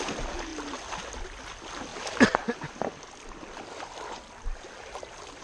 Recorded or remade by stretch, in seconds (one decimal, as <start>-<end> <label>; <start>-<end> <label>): 0.0-1.9 recorded; 1.9-4.2 remade; 4.2-5.4 recorded